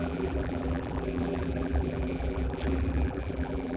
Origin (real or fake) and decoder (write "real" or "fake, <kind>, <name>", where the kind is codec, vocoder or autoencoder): fake, vocoder, BigVGAN v2